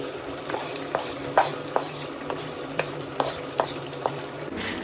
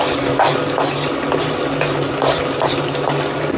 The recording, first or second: second